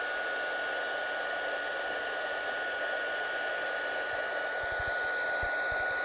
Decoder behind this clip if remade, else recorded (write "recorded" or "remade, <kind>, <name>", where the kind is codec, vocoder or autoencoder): recorded